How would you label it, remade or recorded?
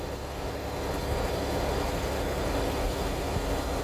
recorded